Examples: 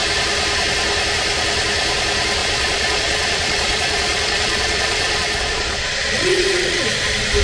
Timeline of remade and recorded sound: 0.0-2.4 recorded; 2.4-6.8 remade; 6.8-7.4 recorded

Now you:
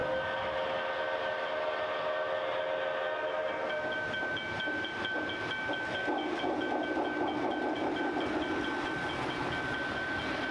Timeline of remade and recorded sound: 0.0-10.5 recorded

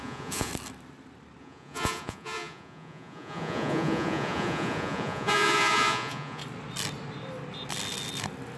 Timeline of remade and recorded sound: 0.0-0.5 remade; 0.5-1.4 recorded; 1.4-6.4 remade; 6.4-8.6 recorded